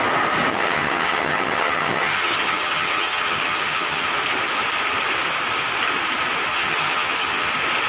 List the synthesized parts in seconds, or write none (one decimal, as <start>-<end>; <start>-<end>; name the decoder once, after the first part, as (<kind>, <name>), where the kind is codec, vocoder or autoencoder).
0.5-4.1 (vocoder, HiFi-GAN); 6.5-7.5